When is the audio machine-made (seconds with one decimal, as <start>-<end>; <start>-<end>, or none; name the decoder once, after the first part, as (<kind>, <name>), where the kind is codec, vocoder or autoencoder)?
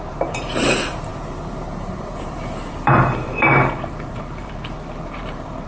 0.0-5.7 (vocoder, BigVGAN v2)